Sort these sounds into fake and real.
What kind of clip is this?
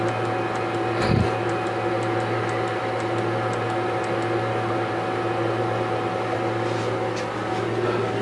real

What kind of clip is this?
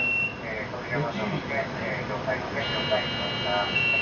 real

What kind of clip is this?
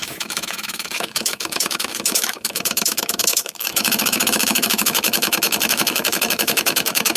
fake